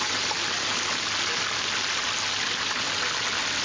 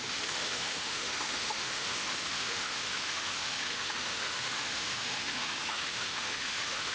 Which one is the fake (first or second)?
second